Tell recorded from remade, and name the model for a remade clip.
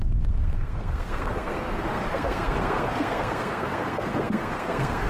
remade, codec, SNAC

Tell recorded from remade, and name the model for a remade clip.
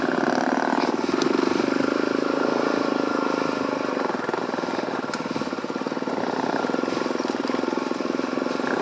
recorded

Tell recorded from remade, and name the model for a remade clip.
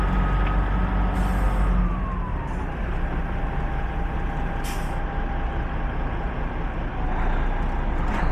recorded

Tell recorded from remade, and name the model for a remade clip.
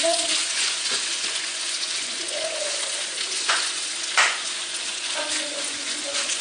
remade, vocoder, Vocos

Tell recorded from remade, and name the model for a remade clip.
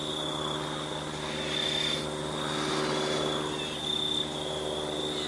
recorded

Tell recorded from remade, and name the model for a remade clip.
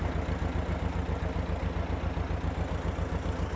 recorded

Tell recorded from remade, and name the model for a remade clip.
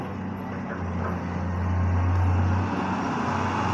recorded